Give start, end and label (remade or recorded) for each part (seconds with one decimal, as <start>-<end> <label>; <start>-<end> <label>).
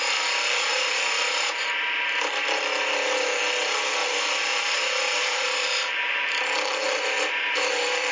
0.0-0.7 recorded; 0.7-3.4 remade; 3.4-4.0 recorded; 4.0-8.1 remade